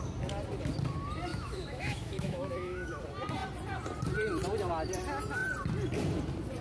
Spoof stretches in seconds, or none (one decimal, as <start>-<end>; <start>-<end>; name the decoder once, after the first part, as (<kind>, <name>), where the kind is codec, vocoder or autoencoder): 1.3-3.0 (autoencoder, DAC-VAE)